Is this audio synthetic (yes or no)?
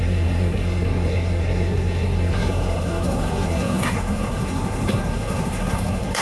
yes